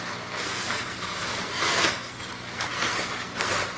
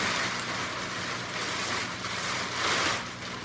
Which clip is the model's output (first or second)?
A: first